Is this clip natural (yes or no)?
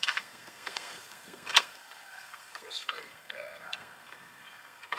no